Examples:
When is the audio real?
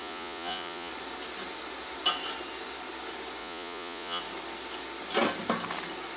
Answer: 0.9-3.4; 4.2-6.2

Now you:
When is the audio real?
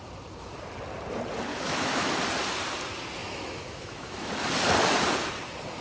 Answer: 0.0-1.5; 2.1-3.2; 4.3-5.8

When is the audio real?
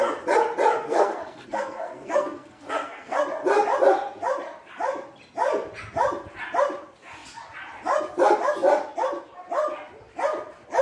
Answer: 0.0-0.8; 3.2-10.8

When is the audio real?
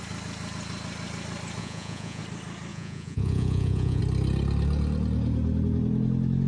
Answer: 0.0-1.6; 2.2-2.7; 4.0-6.5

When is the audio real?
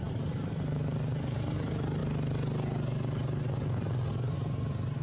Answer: 2.0-4.3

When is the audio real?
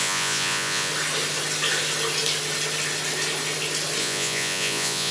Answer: 0.9-4.0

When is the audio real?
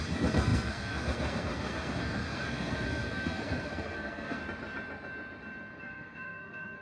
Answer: 4.4-5.8